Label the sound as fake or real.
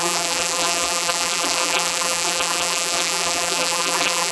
fake